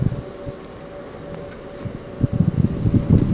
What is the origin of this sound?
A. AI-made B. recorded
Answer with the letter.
B